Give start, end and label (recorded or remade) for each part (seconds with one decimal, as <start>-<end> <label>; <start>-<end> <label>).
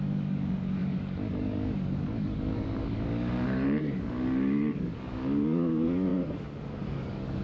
0.0-7.4 remade